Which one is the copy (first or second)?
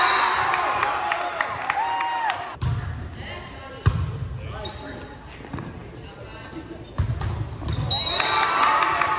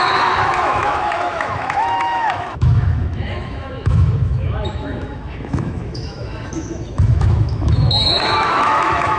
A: second